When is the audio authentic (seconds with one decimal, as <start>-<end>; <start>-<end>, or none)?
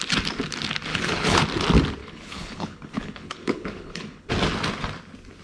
0.0-0.9; 1.4-2.0; 4.3-5.4